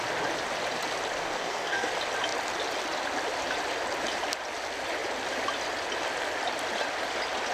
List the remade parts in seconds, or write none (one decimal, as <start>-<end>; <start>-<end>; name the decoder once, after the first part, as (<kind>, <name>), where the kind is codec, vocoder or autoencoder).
1.2-1.9 (codec, SNAC)